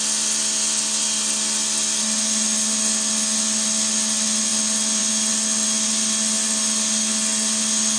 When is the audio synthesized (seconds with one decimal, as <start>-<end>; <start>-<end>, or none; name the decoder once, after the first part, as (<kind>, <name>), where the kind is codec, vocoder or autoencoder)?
none